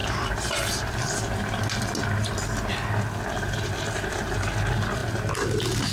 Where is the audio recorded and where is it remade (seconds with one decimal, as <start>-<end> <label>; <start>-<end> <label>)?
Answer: 0.0-5.9 recorded